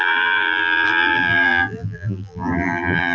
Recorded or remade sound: remade